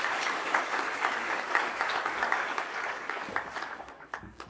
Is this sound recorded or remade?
remade